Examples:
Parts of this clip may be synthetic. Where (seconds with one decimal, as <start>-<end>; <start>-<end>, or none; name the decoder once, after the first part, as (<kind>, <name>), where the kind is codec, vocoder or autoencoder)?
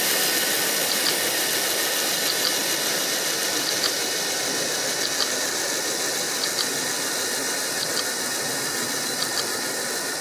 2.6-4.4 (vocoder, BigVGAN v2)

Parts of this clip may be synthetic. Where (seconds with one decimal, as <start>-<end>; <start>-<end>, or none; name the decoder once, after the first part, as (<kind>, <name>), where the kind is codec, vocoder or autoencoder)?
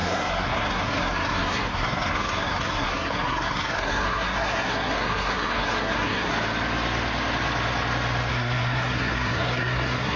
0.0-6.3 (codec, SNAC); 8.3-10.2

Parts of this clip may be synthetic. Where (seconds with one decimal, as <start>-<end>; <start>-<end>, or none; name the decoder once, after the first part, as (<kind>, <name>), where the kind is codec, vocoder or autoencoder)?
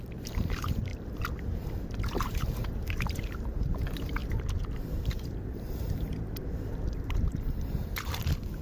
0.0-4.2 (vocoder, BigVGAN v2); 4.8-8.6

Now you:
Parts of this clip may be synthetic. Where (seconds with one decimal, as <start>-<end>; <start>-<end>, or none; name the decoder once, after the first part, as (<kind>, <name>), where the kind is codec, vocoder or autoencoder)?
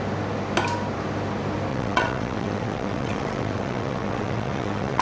1.7-5.0 (vocoder, WaveNeXt)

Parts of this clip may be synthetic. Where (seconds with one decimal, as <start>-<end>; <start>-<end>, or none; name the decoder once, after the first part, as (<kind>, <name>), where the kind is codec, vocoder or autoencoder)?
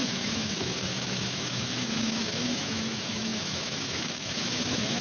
0.0-5.0 (autoencoder, DAC-VAE)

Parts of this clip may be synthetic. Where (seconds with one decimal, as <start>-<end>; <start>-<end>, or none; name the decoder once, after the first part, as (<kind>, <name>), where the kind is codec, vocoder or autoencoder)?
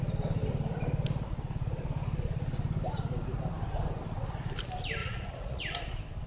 5.0-5.6 (vocoder, Vocos)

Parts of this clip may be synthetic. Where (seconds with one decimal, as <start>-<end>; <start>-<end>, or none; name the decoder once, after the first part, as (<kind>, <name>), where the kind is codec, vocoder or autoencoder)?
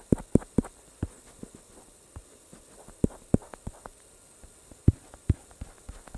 none